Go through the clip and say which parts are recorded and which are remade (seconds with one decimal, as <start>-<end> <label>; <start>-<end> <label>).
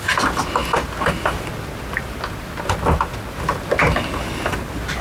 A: 0.0-5.0 recorded